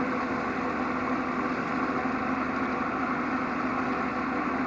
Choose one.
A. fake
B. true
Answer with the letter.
B